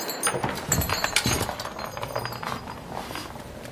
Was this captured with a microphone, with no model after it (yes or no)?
yes